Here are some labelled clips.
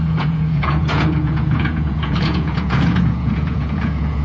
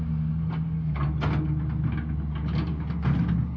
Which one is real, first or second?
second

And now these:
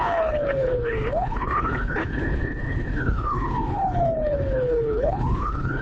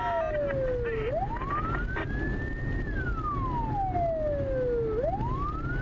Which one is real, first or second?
second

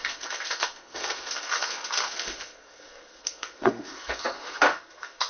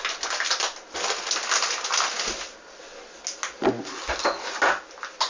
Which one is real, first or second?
second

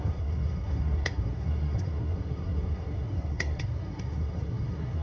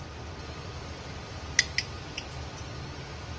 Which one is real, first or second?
second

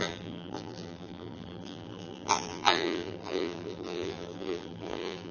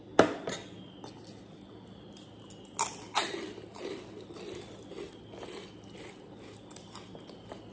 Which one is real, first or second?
second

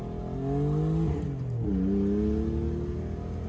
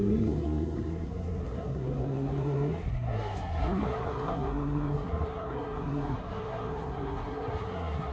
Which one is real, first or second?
first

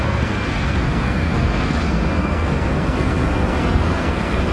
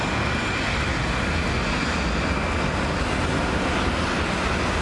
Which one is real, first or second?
second